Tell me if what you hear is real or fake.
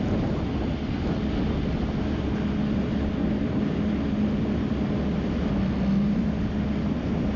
real